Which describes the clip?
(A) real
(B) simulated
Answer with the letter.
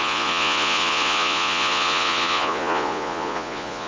B